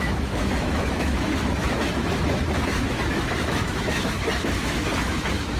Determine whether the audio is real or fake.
fake